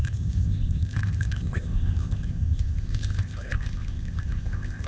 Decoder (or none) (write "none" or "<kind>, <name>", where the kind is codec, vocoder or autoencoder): codec, ZipCodec